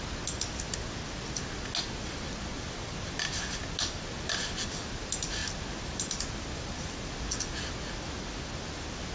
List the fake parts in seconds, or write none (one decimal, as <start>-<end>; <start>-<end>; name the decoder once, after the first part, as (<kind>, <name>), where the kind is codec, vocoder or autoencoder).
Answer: none